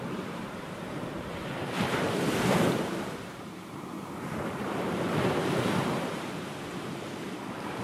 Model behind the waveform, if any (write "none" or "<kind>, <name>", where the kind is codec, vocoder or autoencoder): vocoder, BigVGAN v2